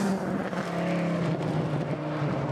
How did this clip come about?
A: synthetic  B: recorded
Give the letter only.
B